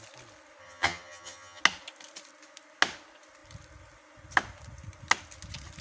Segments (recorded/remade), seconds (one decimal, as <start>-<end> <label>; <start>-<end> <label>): 0.0-0.6 recorded; 0.6-1.6 remade; 1.6-5.8 recorded